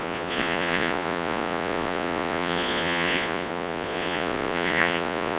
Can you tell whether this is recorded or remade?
remade